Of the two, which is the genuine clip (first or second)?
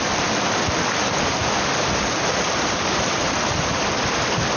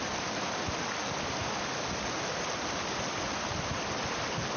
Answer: second